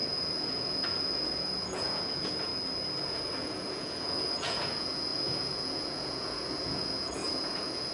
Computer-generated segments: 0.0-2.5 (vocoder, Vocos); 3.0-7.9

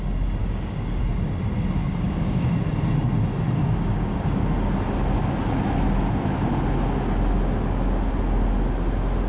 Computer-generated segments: 0.4-1.0 (codec, DAC); 1.8-2.5; 3.6-4.8

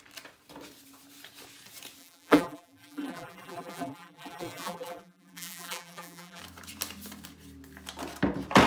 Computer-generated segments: 2.0-6.4 (vocoder, BigVGAN v2)

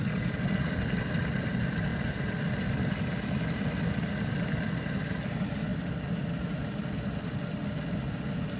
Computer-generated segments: none